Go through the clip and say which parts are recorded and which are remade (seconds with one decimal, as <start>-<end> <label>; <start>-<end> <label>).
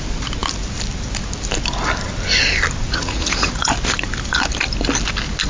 0.0-2.9 recorded; 2.9-3.7 remade; 3.7-5.5 recorded